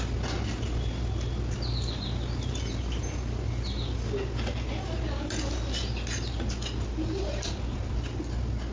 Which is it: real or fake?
real